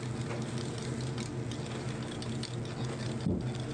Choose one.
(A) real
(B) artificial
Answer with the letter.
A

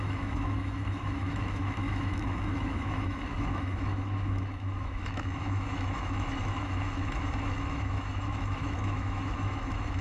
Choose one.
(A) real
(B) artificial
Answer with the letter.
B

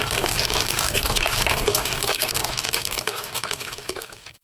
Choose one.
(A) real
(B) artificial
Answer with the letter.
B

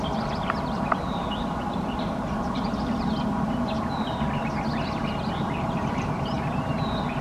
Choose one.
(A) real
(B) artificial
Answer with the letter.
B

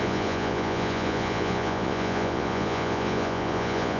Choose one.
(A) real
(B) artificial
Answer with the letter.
B